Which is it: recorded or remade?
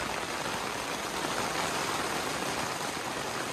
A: recorded